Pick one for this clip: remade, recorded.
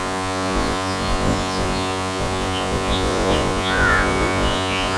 remade